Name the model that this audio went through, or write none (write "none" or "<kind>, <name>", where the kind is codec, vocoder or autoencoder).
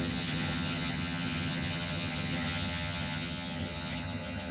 vocoder, HiFi-GAN